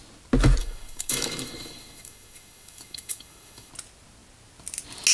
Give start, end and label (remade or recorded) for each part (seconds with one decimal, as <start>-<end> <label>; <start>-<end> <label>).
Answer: 0.0-0.6 recorded; 0.6-3.7 remade; 3.7-5.1 recorded